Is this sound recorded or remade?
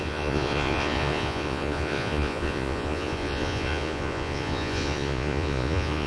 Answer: remade